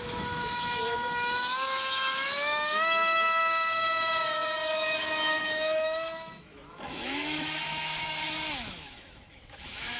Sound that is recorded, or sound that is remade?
remade